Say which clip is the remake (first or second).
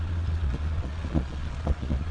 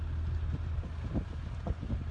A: first